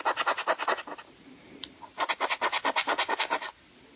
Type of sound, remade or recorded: recorded